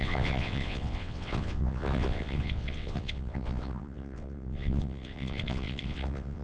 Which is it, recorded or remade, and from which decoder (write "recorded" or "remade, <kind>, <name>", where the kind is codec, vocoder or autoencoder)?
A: remade, vocoder, WaveNeXt